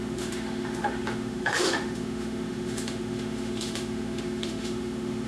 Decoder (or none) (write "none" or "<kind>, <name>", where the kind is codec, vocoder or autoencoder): autoencoder, DAC-VAE